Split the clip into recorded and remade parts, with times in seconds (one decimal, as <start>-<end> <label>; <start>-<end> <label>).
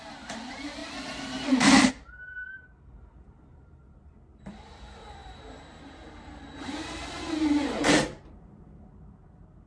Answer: 0.0-9.7 remade